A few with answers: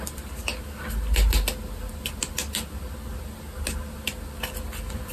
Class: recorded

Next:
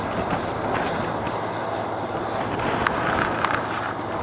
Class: recorded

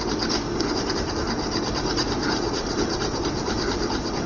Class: remade